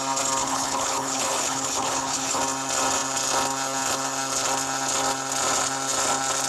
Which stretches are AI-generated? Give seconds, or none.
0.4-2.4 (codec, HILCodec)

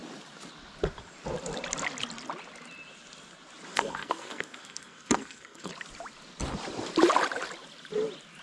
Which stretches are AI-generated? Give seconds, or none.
3.7-5.7 (codec, SNAC)